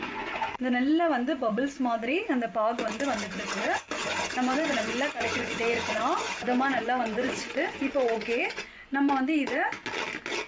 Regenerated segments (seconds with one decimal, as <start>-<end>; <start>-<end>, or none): 0.0-9.8

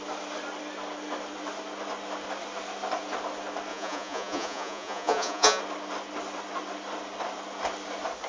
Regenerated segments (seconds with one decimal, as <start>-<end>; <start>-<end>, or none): 3.7-5.6

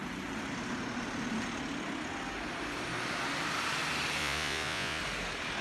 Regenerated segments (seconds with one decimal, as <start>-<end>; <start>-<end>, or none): 4.2-5.0